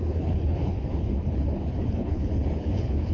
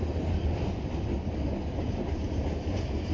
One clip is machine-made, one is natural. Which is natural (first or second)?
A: second